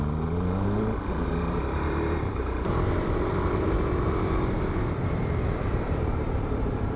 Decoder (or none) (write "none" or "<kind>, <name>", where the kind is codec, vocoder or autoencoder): vocoder, BigVGAN v2